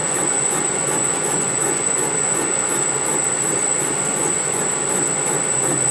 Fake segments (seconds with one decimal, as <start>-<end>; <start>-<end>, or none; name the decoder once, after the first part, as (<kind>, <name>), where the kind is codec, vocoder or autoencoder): 0.0-2.6 (vocoder, Vocos); 4.1-4.6